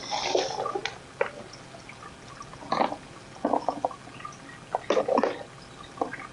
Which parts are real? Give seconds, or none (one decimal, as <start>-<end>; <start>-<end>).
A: 0.0-6.3